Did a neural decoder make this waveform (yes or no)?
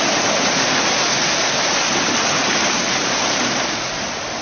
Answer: no